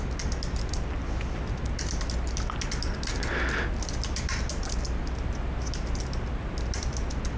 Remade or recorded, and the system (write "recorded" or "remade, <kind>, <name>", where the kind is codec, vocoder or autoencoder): recorded